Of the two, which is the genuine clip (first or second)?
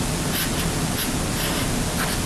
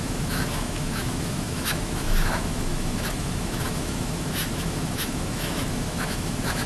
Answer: first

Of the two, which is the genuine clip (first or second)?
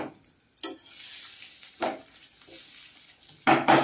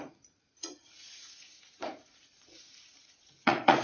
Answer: first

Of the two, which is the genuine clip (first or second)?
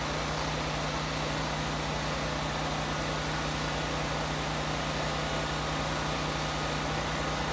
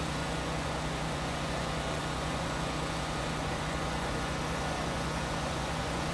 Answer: first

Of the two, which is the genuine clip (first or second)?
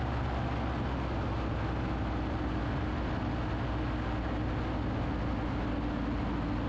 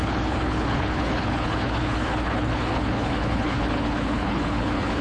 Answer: first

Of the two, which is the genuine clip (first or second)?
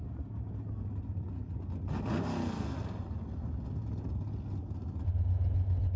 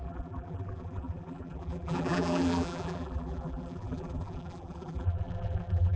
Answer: first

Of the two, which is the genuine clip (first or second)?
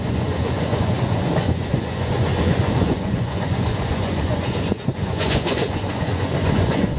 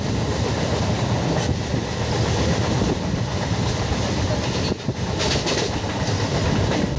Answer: second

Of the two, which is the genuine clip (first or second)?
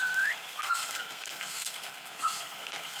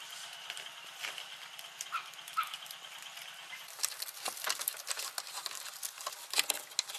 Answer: second